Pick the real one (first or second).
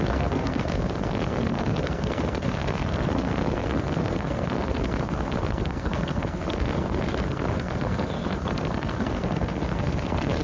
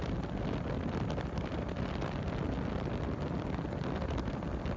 second